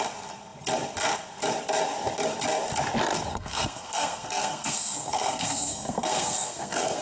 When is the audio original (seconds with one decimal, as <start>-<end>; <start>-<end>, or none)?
0.0-3.3